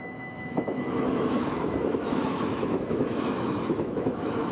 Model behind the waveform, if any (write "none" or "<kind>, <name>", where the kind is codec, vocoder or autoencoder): autoencoder, DAC-VAE